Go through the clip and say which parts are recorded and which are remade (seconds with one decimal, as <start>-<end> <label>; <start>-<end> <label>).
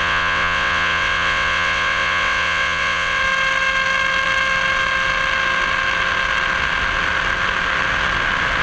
0.0-3.2 remade; 3.2-8.6 recorded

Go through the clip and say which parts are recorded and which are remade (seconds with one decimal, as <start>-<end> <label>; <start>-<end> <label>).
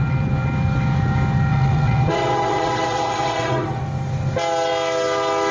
0.0-1.5 recorded; 1.5-3.8 remade; 3.8-5.5 recorded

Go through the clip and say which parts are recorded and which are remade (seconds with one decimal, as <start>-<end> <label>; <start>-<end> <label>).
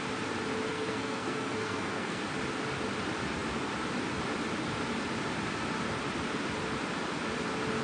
0.0-0.7 recorded; 0.7-2.2 remade; 2.2-7.8 recorded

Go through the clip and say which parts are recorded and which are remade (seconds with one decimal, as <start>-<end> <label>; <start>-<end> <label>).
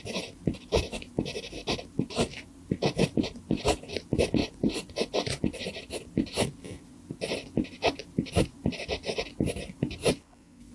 0.0-4.4 recorded; 4.4-5.4 remade; 5.4-10.7 recorded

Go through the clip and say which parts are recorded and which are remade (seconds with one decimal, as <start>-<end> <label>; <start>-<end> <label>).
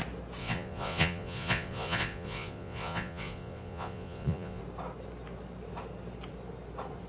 0.0-0.4 recorded; 0.4-4.6 remade; 4.6-7.1 recorded